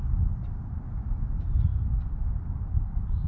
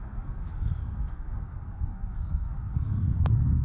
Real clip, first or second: first